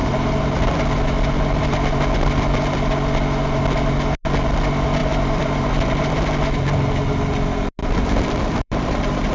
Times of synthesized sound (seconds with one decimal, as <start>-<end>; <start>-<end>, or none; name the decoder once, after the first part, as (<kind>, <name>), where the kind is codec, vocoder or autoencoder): 0.0-0.7 (vocoder, BigVGAN v2); 5.0-6.1; 7.8-9.3